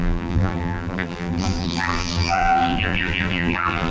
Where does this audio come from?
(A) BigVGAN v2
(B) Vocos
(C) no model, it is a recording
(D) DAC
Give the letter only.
A